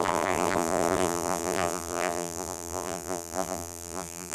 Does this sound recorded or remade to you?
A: remade